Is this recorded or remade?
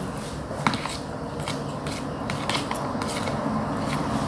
recorded